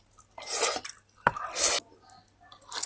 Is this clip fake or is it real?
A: real